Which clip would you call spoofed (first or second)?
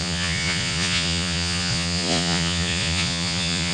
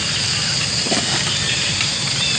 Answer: first